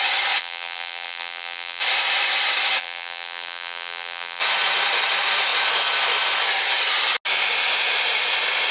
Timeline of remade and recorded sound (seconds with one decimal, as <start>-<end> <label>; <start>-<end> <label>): 0.0-0.4 recorded; 0.4-1.8 remade; 1.8-2.8 recorded; 2.8-4.4 remade; 4.4-8.7 recorded